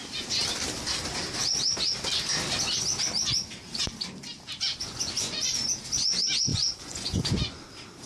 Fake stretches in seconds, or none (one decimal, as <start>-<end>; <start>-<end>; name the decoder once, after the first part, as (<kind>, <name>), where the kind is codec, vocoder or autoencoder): 4.8-5.5 (vocoder, Vocos); 6.5-7.6